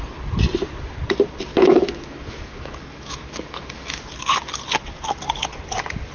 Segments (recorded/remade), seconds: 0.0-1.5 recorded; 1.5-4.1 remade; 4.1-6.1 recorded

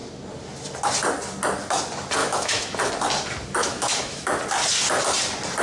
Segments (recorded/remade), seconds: 0.0-2.2 recorded; 2.2-2.9 remade; 2.9-3.6 recorded; 3.6-4.4 remade; 4.4-5.6 recorded

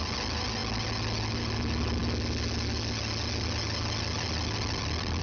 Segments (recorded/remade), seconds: 0.0-5.2 recorded

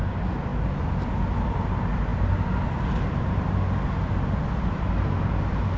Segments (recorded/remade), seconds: 0.0-5.8 recorded

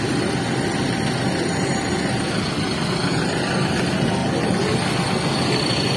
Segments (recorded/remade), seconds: 0.0-6.0 recorded

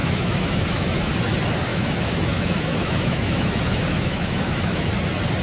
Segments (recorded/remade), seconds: 0.0-1.1 remade; 1.1-1.7 recorded; 1.7-4.9 remade; 4.9-5.4 recorded

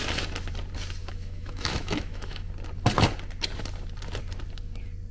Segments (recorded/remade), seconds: 0.0-1.0 recorded; 1.0-2.5 remade; 2.5-5.1 recorded

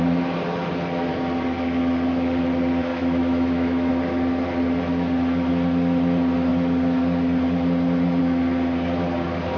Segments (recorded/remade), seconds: 0.0-2.9 recorded; 2.9-3.9 remade; 3.9-9.6 recorded